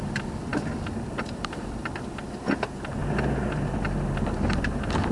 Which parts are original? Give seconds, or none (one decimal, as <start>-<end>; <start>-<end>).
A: 0.0-0.5; 1.9-5.1

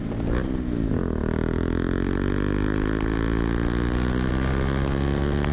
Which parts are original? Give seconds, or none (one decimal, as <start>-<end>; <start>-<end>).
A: 0.0-5.5

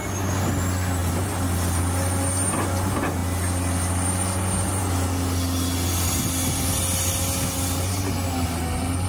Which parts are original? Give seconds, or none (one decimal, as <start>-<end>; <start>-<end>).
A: 0.0-9.1

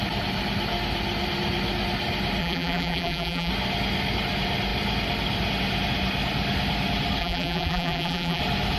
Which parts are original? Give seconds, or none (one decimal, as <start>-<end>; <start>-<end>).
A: 0.0-2.4; 3.5-7.2; 8.4-8.8

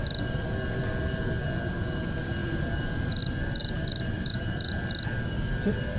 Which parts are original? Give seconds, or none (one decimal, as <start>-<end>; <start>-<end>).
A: 0.0-3.6; 4.7-6.0

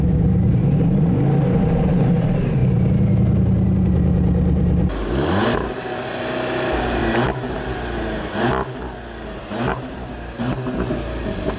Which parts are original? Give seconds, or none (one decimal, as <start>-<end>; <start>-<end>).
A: 7.0-9.7

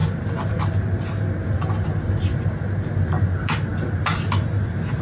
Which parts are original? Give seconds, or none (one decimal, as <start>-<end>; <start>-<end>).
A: 0.0-5.0